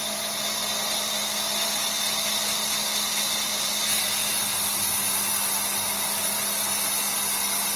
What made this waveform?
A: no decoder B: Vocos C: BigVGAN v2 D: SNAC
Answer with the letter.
A